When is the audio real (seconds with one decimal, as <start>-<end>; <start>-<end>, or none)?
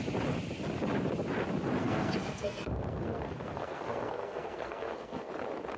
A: 0.0-1.8; 5.3-5.8